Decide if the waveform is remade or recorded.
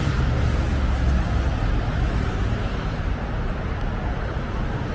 recorded